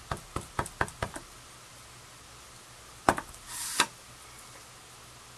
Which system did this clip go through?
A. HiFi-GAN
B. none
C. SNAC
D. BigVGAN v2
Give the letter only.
B